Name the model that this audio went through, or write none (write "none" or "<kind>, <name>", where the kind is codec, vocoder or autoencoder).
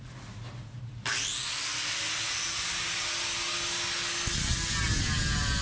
none